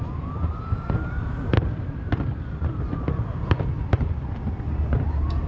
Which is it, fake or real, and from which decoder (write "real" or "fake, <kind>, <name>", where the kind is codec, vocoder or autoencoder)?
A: fake, vocoder, BigVGAN v2